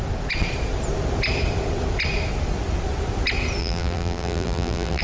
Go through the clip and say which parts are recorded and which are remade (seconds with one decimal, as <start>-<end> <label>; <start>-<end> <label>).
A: 0.0-3.6 recorded; 3.6-5.0 remade